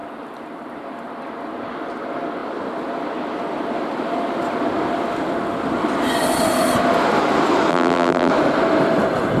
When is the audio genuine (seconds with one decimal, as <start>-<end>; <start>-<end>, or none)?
0.0-7.7; 8.3-9.4